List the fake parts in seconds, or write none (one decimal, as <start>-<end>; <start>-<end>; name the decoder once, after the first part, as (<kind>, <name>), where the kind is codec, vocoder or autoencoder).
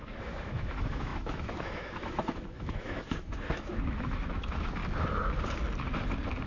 0.0-4.8 (autoencoder, DAC-VAE)